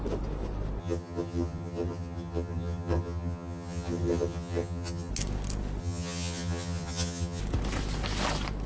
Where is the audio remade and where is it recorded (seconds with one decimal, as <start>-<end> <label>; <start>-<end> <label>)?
0.0-0.8 recorded; 0.8-5.1 remade; 5.1-5.8 recorded; 5.8-7.4 remade; 7.4-8.7 recorded